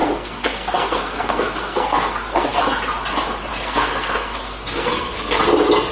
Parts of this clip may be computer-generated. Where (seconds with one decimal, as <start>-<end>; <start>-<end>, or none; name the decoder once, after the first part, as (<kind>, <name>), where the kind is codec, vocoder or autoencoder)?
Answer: 0.0-2.6 (codec, SNAC); 3.5-5.4